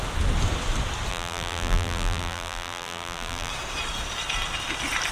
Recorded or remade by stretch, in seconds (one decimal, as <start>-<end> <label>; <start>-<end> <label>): 0.0-1.1 recorded; 1.1-3.5 remade; 3.5-5.1 recorded